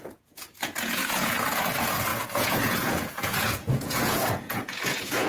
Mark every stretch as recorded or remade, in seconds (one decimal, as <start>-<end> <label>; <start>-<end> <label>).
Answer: 0.0-5.3 remade